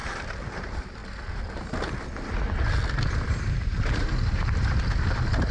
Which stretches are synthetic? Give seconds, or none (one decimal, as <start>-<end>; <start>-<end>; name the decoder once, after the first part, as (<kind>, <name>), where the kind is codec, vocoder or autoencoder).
0.0-1.0 (vocoder, BigVGAN v2); 3.1-5.5